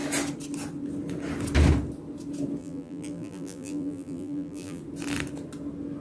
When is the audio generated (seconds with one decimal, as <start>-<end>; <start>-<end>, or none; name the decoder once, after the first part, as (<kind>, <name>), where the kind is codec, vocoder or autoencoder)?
2.6-4.8 (vocoder, BigVGAN v2)